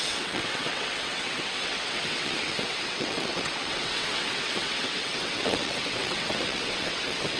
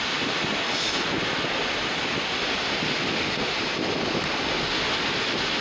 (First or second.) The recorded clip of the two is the second